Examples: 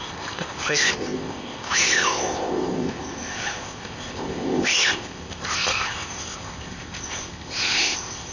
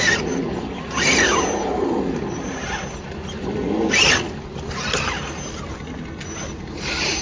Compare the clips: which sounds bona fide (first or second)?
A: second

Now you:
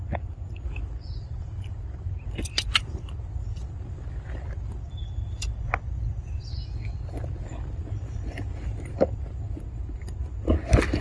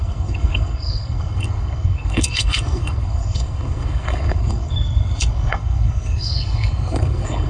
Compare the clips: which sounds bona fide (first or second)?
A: first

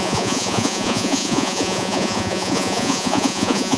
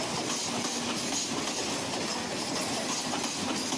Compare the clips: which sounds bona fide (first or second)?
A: second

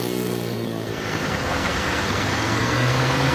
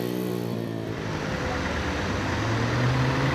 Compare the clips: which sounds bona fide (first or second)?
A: second